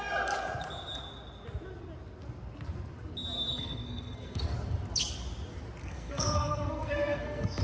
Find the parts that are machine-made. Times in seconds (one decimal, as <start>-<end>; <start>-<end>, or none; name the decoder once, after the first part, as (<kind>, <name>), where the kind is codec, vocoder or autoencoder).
3.5-4.4 (codec, SNAC); 5.8-7.6